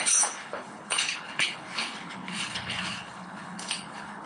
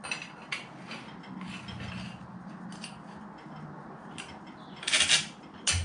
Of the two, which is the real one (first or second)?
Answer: second